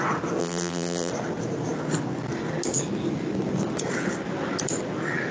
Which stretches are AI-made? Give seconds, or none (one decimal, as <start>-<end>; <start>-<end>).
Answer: 0.4-1.1